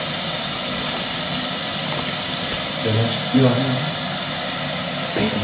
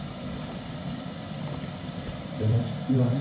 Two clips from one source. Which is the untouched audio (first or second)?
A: first